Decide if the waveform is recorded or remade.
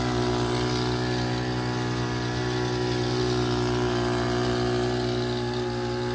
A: recorded